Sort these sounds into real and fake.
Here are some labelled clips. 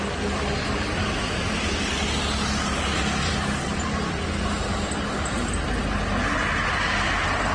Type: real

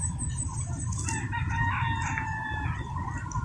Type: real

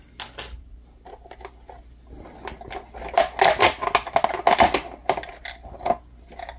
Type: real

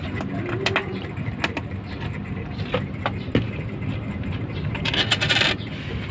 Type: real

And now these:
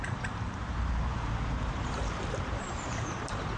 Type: fake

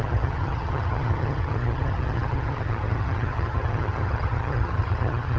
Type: fake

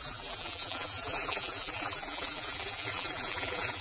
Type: fake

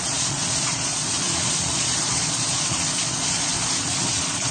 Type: fake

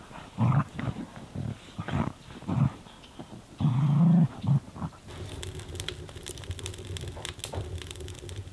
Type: real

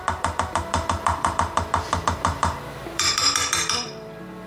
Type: fake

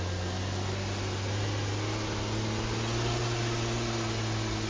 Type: real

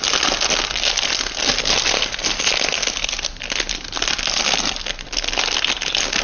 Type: real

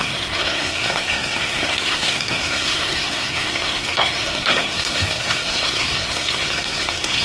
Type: fake